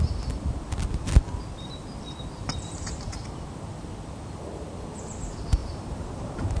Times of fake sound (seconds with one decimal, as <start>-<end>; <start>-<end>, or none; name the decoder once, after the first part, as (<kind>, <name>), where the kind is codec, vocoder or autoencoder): 2.4-3.3 (vocoder, BigVGAN v2); 5.6-6.6